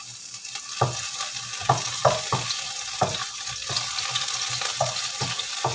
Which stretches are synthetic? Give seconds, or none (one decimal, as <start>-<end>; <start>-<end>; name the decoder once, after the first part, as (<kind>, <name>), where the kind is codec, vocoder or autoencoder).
none